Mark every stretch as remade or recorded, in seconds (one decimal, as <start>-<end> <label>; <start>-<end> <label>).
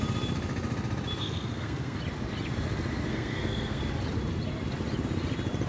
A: 0.0-1.2 recorded; 1.2-2.0 remade; 2.0-3.1 recorded; 3.1-3.8 remade; 3.8-5.7 recorded